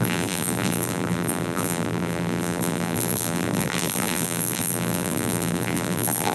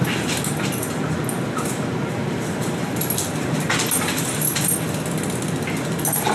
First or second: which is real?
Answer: second